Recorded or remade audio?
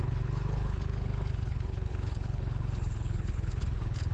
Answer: remade